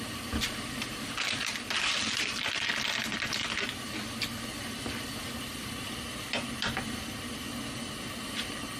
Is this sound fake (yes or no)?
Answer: no